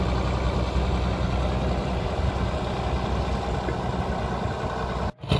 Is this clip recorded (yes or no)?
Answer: yes